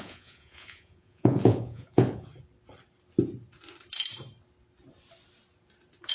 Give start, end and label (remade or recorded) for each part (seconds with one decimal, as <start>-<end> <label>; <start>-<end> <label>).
0.0-2.3 remade; 2.3-6.1 recorded

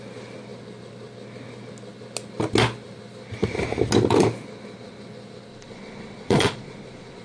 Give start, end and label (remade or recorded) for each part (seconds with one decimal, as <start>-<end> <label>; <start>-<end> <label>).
0.0-5.5 recorded; 5.5-7.2 remade